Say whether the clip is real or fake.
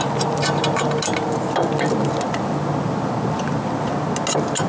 real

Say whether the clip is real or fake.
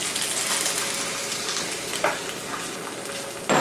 real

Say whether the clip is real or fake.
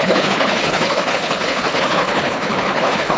fake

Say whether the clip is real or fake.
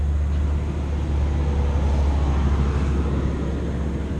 real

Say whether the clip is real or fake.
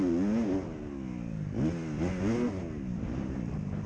real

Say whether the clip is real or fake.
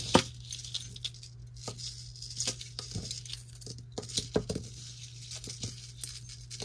real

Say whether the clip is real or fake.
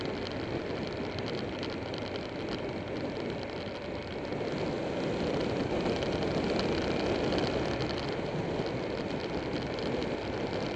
real